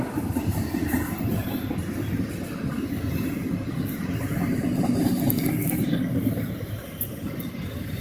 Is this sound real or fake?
real